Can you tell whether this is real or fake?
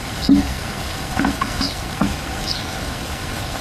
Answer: fake